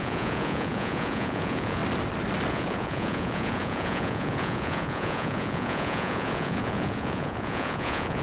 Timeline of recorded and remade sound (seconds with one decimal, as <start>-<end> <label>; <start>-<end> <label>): 0.0-1.8 remade; 1.8-2.5 recorded; 2.5-8.2 remade